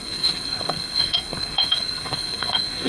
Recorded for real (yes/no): no